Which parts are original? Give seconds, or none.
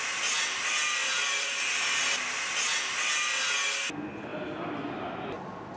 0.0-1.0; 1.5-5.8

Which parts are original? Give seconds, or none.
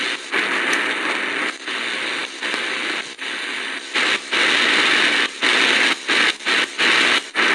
0.0-7.5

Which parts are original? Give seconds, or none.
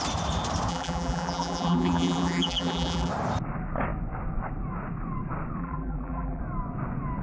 0.0-0.7; 3.1-5.6; 6.4-7.2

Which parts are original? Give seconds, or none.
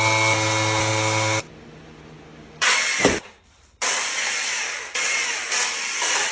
0.0-2.3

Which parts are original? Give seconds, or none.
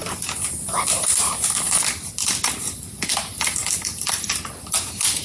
0.0-3.6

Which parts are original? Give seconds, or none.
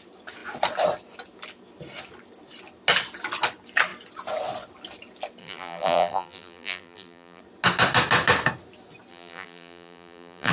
0.0-5.4; 7.4-9.1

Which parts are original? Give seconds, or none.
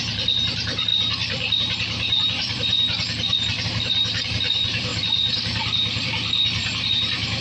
none